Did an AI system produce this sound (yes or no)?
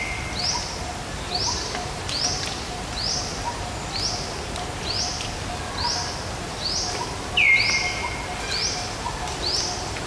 no